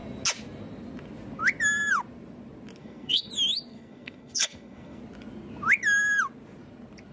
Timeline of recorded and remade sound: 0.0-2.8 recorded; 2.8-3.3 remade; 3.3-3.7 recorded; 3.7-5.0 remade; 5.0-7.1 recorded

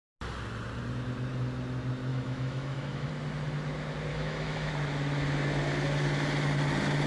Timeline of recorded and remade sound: 0.0-2.1 recorded; 2.1-3.1 remade; 3.1-4.1 recorded; 4.1-4.7 remade; 4.7-7.1 recorded

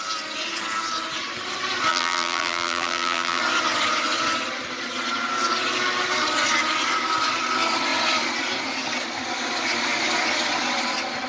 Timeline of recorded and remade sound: 0.0-1.9 recorded; 1.9-3.4 remade; 3.4-11.3 recorded

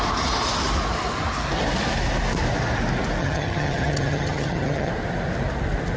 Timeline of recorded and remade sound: 0.0-3.2 recorded; 3.2-4.9 remade; 4.9-6.0 recorded

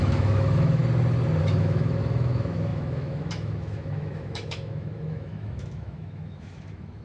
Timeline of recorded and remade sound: 0.0-0.8 remade; 0.8-1.4 recorded; 1.4-7.0 remade

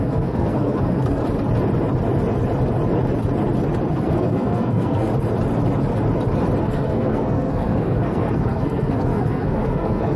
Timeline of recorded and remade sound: 0.0-1.2 remade; 1.2-3.9 recorded; 3.9-5.1 remade; 5.1-6.6 recorded; 6.6-10.2 remade

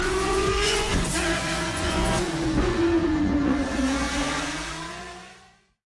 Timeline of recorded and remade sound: 0.0-5.9 remade

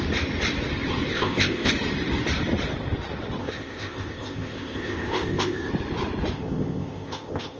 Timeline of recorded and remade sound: 0.0-1.1 recorded; 1.1-1.7 remade; 1.7-3.4 recorded; 3.4-5.7 remade; 5.7-6.3 recorded; 6.3-7.6 remade